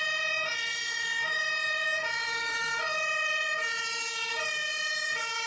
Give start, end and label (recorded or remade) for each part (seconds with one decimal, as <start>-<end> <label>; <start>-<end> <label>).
0.0-5.5 remade